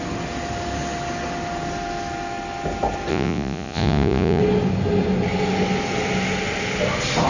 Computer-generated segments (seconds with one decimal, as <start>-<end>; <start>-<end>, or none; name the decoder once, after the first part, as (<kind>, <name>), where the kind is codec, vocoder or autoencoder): 3.1-4.4 (vocoder, Vocos)